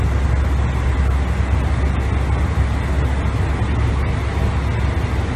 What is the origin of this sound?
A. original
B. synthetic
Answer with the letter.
A